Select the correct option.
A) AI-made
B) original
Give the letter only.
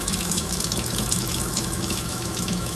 A